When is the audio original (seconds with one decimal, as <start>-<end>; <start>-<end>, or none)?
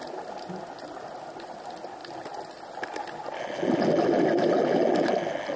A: 0.0-5.6